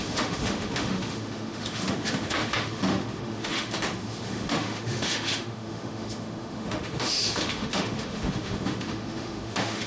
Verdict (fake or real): fake